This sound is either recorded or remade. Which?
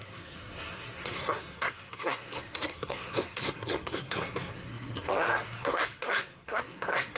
remade